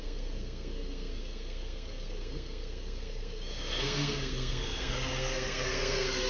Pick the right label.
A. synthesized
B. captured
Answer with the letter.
A